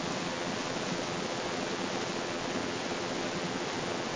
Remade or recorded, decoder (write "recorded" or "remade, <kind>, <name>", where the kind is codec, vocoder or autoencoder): remade, vocoder, WaveNeXt